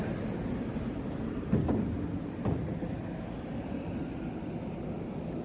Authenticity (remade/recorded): remade